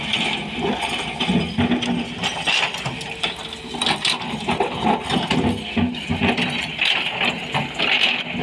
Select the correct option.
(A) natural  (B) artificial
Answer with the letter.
A